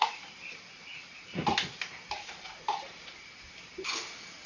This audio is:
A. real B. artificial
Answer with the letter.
A